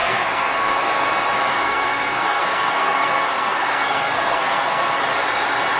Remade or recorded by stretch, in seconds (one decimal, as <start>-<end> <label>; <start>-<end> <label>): 0.0-1.1 remade; 1.1-1.5 recorded; 1.5-5.0 remade; 5.0-5.8 recorded